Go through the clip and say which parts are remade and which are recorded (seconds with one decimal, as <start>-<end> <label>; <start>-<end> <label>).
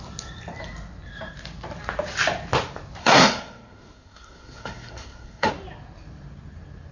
0.0-3.0 recorded; 3.0-5.5 remade; 5.5-6.9 recorded